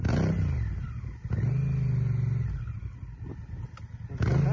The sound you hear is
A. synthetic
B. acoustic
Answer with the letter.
B